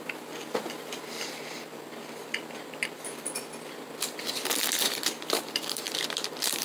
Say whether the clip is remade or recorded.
remade